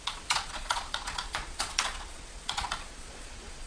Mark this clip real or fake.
fake